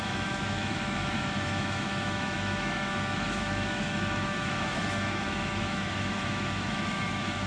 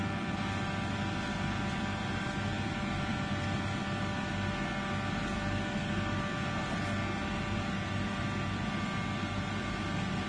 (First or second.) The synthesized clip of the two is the first